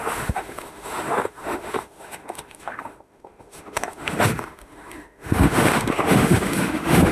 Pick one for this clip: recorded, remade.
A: remade